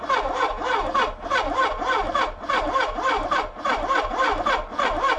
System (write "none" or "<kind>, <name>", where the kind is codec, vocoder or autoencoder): none